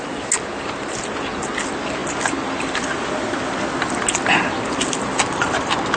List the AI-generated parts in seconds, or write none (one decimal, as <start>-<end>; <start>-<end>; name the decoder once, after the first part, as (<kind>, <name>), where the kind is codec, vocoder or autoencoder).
none